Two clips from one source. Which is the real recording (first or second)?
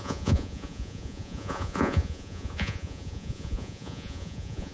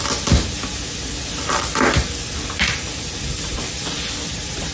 second